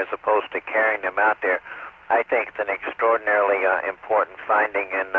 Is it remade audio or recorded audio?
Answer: recorded